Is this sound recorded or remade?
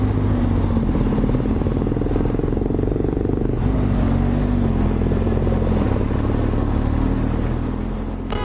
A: recorded